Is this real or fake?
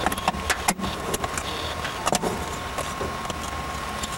real